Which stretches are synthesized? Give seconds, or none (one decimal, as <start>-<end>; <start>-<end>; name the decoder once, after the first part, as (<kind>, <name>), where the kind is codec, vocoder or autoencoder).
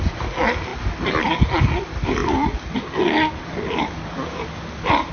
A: none